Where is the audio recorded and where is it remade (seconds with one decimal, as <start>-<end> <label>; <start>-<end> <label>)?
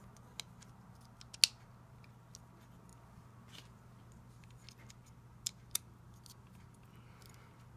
0.0-7.8 recorded